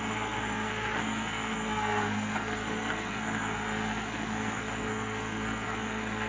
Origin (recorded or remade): remade